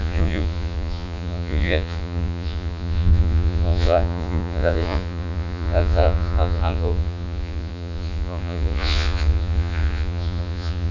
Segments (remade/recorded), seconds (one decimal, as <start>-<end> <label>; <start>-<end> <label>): 0.0-10.9 remade